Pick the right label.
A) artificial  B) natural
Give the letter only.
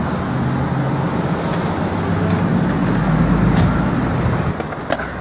B